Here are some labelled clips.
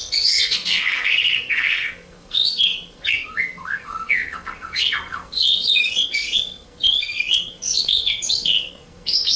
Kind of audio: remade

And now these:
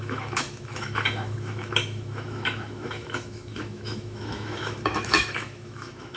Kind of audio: remade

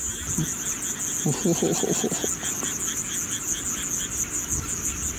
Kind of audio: recorded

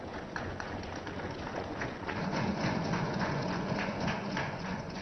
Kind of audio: remade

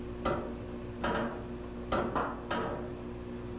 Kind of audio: recorded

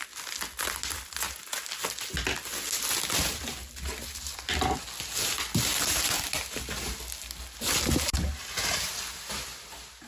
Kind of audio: recorded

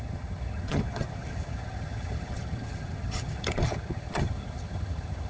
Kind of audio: remade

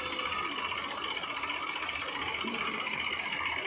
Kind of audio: recorded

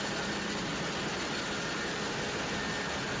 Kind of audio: recorded